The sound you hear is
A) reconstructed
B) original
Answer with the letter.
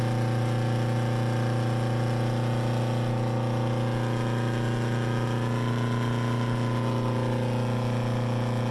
B